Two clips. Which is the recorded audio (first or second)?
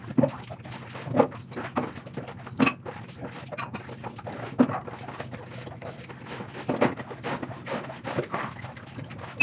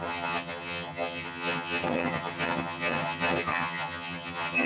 first